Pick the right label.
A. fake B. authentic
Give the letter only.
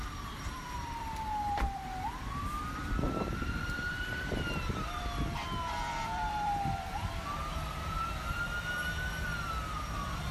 A